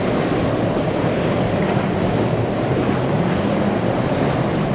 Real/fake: real